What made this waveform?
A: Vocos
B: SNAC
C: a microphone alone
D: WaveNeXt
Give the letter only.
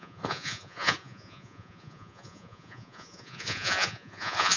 A